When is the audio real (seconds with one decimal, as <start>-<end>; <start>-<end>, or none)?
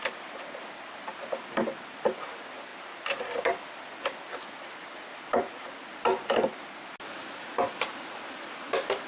0.0-9.1